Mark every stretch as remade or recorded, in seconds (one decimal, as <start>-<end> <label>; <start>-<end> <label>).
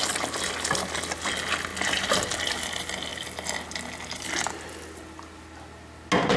0.0-6.4 recorded